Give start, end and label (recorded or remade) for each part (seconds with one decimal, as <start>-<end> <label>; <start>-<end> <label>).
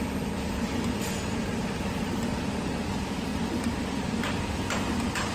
0.0-1.5 recorded; 1.5-2.2 remade; 2.2-5.3 recorded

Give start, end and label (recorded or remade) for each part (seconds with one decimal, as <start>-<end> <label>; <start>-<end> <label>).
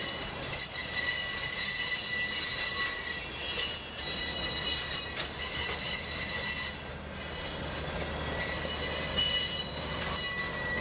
0.0-1.2 remade; 1.2-10.8 recorded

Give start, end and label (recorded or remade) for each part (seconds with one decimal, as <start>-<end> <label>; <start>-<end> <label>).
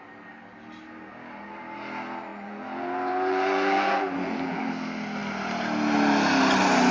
0.0-2.3 recorded; 2.3-4.7 remade; 4.7-6.9 recorded